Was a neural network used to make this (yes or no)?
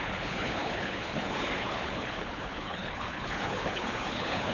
yes